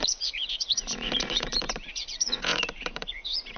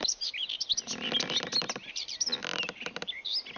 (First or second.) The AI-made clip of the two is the first